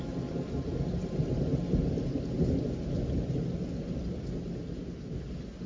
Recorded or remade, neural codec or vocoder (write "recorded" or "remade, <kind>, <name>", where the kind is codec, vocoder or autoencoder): recorded